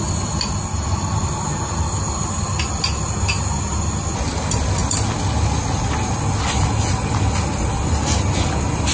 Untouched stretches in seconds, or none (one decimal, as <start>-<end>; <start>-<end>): 0.0-8.9